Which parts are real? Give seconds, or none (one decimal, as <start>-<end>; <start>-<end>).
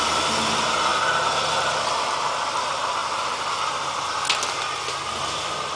0.0-5.8